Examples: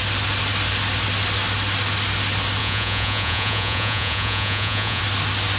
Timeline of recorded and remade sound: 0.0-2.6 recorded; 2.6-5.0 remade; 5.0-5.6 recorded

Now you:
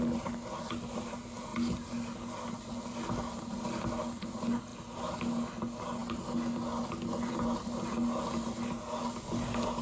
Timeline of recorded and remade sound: 0.0-9.8 recorded

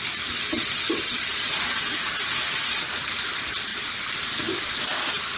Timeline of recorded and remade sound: 0.0-5.4 recorded